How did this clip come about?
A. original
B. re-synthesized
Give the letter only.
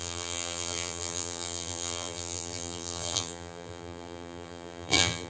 B